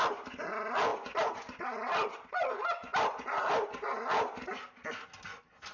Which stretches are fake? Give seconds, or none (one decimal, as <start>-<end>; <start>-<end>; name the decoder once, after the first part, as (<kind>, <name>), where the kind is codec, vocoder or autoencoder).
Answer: none